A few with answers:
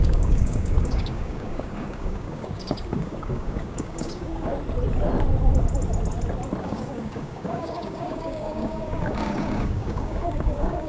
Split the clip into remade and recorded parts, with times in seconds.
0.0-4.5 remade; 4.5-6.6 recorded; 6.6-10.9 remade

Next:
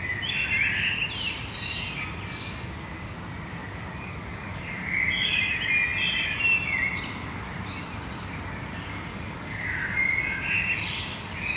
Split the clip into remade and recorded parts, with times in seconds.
0.0-3.6 recorded; 3.6-4.6 remade; 4.6-9.1 recorded; 9.1-9.6 remade; 9.6-11.6 recorded

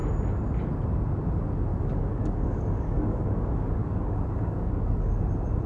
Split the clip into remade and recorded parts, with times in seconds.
0.0-1.7 recorded; 1.7-5.1 remade; 5.1-5.7 recorded

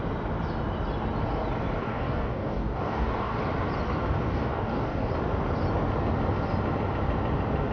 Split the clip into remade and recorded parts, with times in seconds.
0.0-1.8 recorded; 1.8-3.4 remade; 3.4-4.2 recorded; 4.2-5.1 remade; 5.1-7.7 recorded

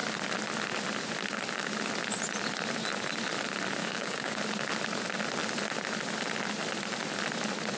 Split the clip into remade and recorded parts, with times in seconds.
0.0-3.8 recorded; 3.8-4.4 remade; 4.4-7.8 recorded

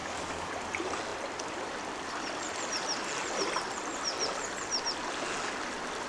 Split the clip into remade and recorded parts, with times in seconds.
0.0-0.5 remade; 0.5-6.1 recorded

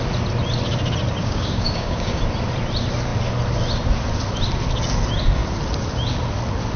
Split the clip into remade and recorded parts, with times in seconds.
0.0-1.2 recorded; 1.2-2.2 remade; 2.2-6.8 recorded